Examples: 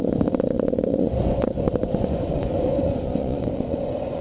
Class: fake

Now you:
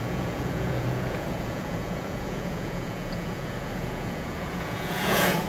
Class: fake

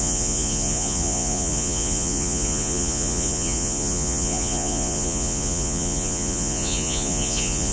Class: fake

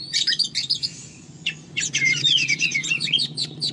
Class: fake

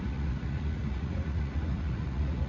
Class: fake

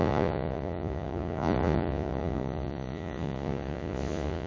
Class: fake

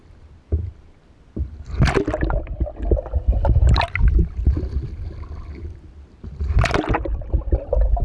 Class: real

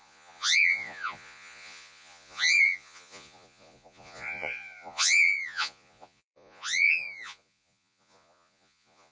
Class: fake